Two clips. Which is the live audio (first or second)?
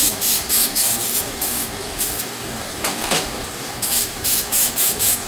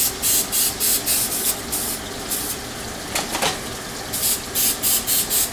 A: second